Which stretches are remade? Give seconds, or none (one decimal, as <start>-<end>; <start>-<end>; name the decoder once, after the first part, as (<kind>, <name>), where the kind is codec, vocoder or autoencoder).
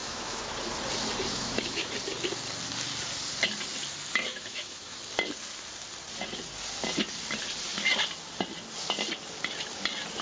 0.0-0.5 (autoencoder, DAC-VAE); 1.3-1.9; 4.3-5.0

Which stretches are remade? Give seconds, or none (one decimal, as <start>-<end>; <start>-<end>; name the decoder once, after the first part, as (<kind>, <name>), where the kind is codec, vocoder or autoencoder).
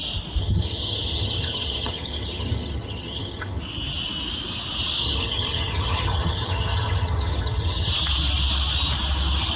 0.4-3.6 (vocoder, HiFi-GAN); 5.0-7.9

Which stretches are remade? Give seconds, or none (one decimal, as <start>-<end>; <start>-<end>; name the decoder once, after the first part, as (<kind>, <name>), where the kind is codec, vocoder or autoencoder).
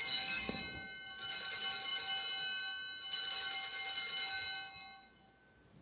0.0-0.6 (codec, SNAC)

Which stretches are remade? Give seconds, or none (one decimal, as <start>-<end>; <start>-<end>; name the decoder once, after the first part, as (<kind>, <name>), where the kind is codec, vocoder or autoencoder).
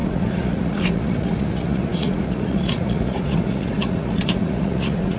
0.0-5.2 (vocoder, Vocos)